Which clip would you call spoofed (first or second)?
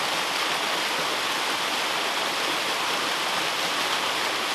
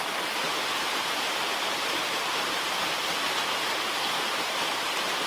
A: second